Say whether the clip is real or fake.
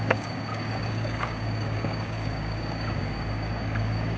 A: fake